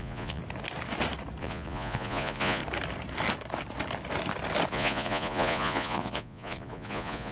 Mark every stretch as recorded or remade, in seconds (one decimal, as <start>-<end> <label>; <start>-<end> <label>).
0.0-0.4 remade; 0.4-1.4 recorded; 1.4-2.6 remade; 2.6-4.7 recorded; 4.7-7.3 remade